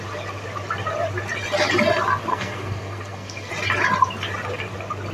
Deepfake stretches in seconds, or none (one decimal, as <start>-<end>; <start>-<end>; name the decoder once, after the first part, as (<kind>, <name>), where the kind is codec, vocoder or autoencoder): 2.3-3.5 (codec, SNAC)